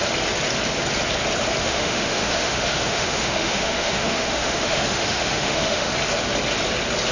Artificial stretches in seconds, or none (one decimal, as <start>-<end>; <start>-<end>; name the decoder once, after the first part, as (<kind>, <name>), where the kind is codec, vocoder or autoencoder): 1.6-5.9 (autoencoder, DAC-VAE)